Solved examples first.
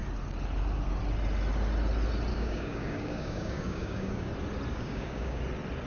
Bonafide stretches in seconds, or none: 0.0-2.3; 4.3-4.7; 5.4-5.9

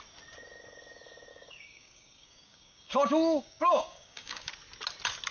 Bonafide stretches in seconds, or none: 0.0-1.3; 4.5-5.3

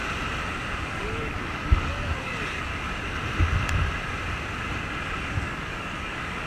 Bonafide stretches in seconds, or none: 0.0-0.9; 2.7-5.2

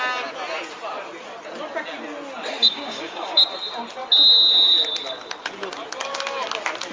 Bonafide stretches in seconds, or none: 0.0-2.6; 3.4-6.9

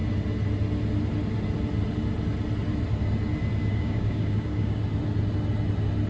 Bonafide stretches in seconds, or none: 0.0-3.7; 4.8-6.1

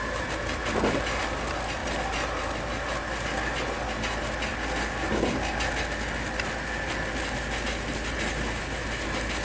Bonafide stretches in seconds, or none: 0.0-9.4

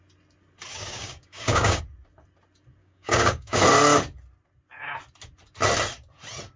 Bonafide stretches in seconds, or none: 0.0-0.7; 1.8-2.8; 3.6-6.6